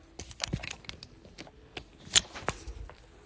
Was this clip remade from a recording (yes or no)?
no